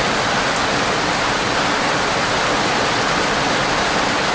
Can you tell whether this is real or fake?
real